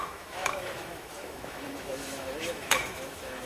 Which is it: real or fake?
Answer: fake